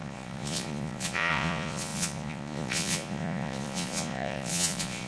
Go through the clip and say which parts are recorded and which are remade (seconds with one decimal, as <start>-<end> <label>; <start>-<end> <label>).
0.0-5.1 remade